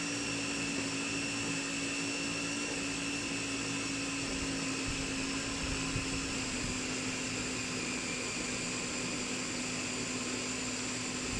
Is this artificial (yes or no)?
no